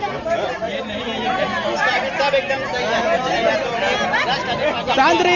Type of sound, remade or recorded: recorded